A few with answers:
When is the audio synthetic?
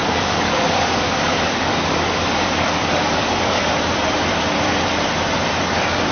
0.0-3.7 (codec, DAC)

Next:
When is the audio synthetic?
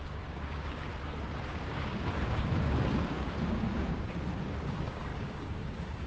0.0-0.9 (codec, DAC); 1.4-6.1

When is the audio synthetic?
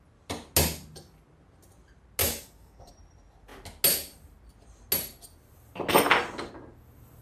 2.2-2.9 (codec, DAC)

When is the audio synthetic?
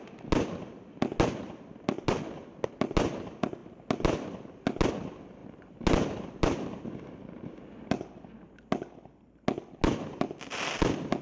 none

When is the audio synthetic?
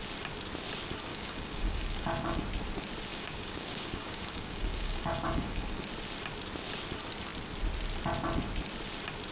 1.1-2.4 (codec, DAC); 3.1-5.8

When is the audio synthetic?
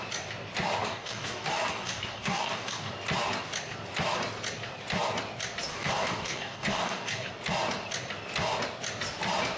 0.8-2.9 (codec, DAC); 5.7-7.3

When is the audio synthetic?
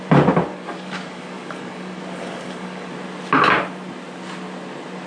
0.5-2.9 (codec, DAC)